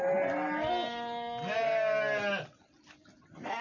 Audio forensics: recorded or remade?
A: recorded